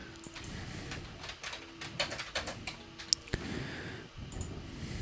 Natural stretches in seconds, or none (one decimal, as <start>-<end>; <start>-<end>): 0.0-5.0